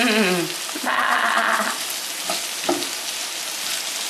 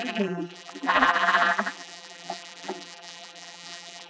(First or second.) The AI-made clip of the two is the second